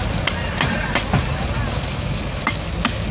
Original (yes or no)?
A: yes